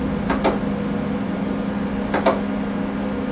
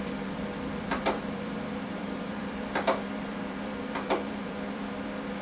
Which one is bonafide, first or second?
first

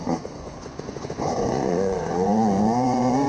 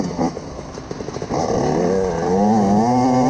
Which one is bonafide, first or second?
second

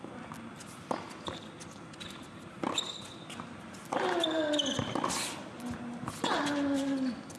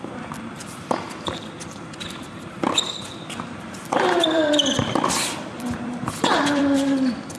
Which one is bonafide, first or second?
first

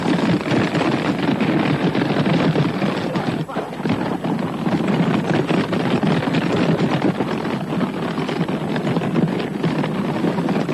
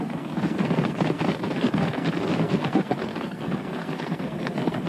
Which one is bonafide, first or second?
first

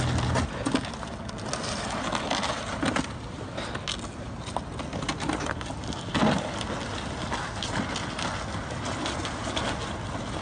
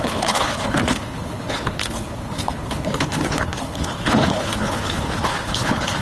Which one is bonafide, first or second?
first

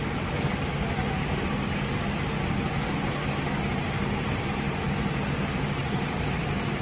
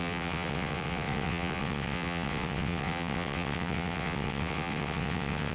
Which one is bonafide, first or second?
first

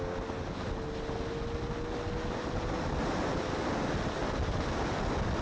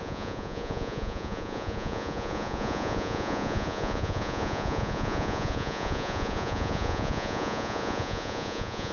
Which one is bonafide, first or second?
first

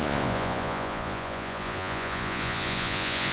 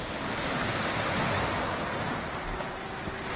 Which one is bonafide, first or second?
second